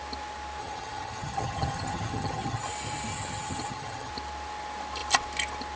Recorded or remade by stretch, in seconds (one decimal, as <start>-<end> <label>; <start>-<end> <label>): 0.0-0.6 recorded; 0.6-2.7 remade; 2.7-3.1 recorded; 3.1-4.1 remade; 4.1-5.8 recorded